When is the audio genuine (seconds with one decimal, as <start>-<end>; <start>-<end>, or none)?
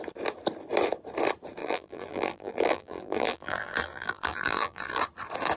0.0-1.6; 5.0-5.6